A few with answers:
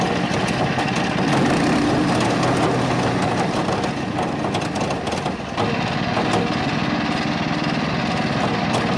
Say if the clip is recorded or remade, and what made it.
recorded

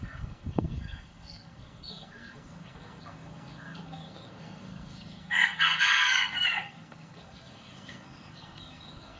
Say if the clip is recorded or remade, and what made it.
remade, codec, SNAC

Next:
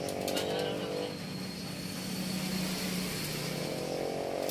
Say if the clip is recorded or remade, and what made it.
recorded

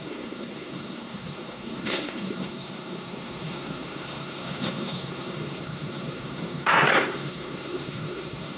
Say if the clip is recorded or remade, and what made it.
remade, codec, SNAC